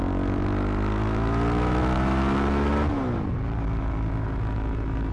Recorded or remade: recorded